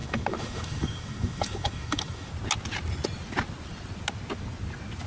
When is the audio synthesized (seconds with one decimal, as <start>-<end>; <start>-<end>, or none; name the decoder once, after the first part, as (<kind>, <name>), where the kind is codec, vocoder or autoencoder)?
0.0-2.3 (autoencoder, DAC-VAE)